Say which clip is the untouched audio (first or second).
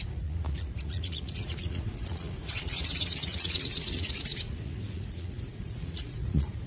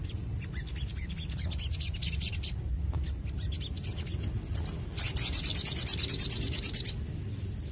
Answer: second